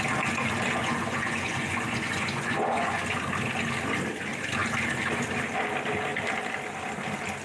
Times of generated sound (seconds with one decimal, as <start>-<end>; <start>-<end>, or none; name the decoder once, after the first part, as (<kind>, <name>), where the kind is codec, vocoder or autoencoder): 0.8-3.0 (vocoder, Vocos)